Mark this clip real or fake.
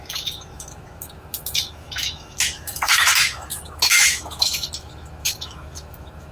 fake